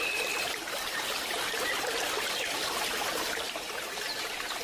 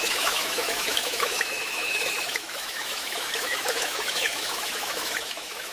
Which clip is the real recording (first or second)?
first